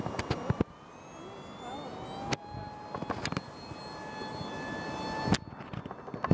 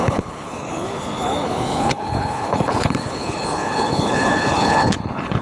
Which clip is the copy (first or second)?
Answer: second